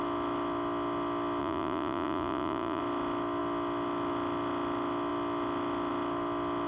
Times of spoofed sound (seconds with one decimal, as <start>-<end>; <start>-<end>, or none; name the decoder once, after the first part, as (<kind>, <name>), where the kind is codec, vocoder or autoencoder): 1.4-2.8 (vocoder, Vocos)